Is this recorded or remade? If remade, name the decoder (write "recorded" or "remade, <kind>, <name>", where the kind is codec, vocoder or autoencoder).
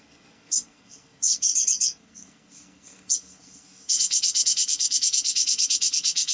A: remade, codec, SNAC